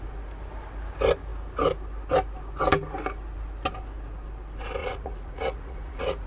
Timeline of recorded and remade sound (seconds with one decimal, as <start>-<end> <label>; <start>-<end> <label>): 0.0-4.8 recorded; 4.8-6.3 remade